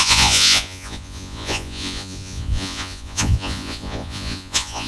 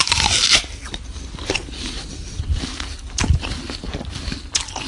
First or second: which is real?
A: second